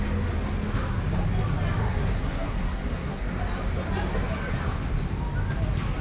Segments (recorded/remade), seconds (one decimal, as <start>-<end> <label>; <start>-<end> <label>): 0.0-1.8 recorded; 1.8-3.4 remade; 3.4-6.0 recorded